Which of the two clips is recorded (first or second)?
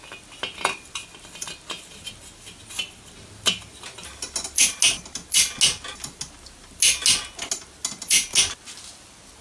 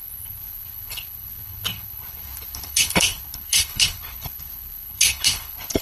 first